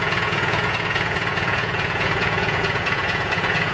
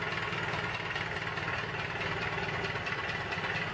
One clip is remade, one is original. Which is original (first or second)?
second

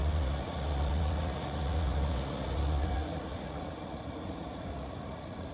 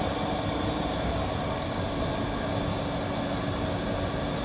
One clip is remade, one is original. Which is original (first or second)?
second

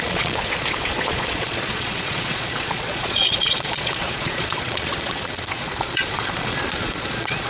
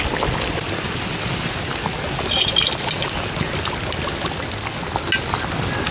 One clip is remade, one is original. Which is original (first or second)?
second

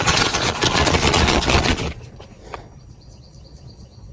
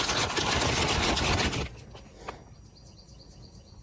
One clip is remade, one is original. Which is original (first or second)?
second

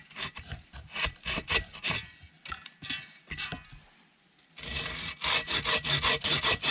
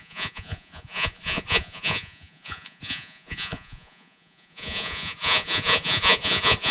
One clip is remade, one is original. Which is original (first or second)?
first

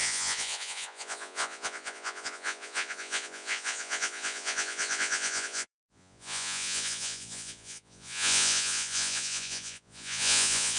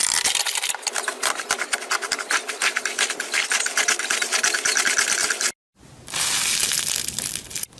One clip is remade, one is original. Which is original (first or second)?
second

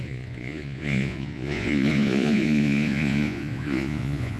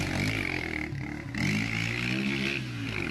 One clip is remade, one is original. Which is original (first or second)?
second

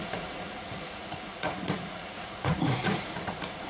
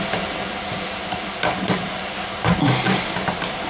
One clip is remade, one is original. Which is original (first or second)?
second